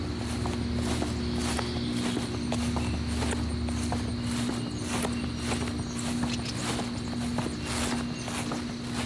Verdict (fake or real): real